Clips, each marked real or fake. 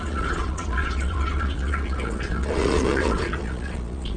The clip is fake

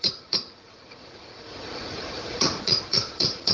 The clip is fake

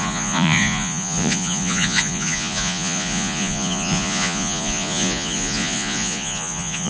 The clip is fake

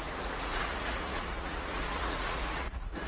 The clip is fake